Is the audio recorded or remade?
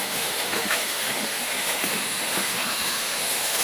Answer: remade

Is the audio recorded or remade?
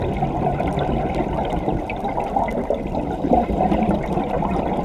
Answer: recorded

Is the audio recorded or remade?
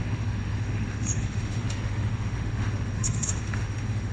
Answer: remade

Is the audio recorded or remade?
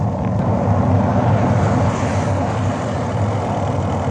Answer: recorded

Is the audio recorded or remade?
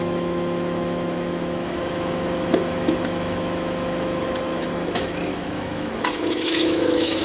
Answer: remade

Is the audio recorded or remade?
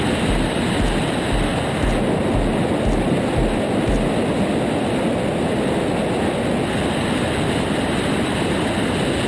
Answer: recorded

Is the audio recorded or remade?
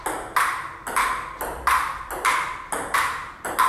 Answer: recorded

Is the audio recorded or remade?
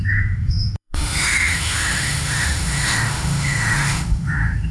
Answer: remade